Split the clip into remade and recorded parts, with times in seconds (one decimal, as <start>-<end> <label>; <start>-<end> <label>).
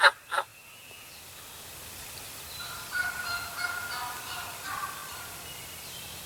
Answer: 0.0-0.5 recorded; 0.5-1.2 remade; 1.2-3.3 recorded; 3.3-3.9 remade; 3.9-6.3 recorded